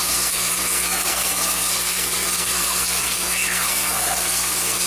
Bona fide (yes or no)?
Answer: no